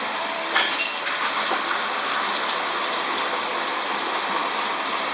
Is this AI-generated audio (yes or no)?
yes